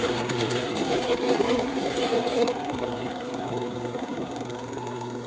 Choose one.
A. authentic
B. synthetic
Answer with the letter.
B